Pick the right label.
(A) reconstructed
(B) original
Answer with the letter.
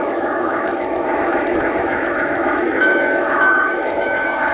A